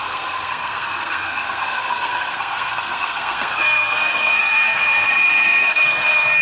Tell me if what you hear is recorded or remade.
remade